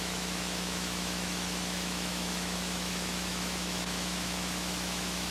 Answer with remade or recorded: remade